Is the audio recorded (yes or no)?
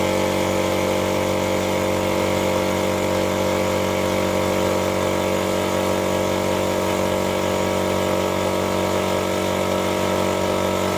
yes